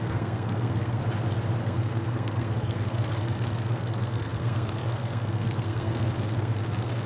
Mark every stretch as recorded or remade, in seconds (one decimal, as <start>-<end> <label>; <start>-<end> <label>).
0.0-1.0 remade; 1.0-1.6 recorded; 1.6-7.1 remade